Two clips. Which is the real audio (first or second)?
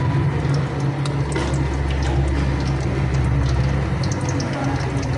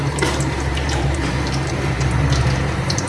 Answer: first